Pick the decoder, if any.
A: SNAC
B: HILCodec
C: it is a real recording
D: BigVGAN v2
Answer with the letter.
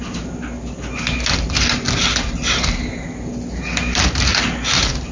C